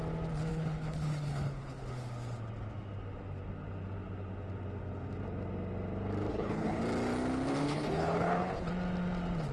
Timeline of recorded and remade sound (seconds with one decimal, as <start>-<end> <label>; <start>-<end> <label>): 0.0-0.5 recorded; 0.5-1.9 remade; 1.9-6.3 recorded; 6.3-6.8 remade; 6.8-7.6 recorded; 7.6-8.7 remade; 8.7-9.5 recorded